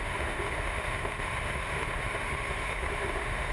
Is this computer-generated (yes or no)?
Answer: yes